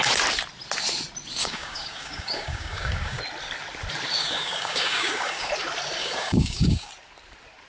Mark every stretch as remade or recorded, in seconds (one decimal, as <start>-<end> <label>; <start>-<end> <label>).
0.0-1.4 recorded; 1.4-3.2 remade; 3.2-4.2 recorded; 4.2-5.5 remade; 5.5-6.0 recorded; 6.0-6.9 remade; 6.9-7.7 recorded